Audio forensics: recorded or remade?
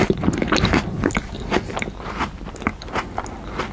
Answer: recorded